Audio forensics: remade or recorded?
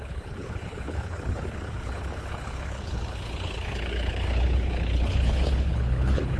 remade